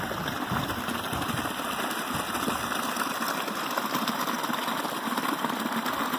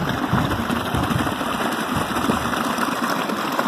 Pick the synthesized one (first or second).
second